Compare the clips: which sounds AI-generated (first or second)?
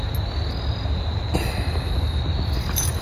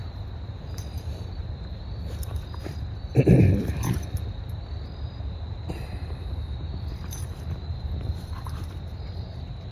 second